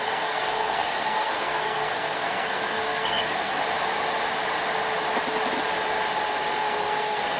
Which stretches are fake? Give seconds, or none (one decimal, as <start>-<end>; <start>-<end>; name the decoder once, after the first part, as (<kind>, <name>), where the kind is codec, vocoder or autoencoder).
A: 0.0-3.6 (codec, SNAC); 6.6-7.4